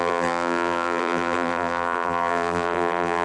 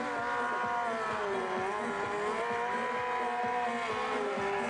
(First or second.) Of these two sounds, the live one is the second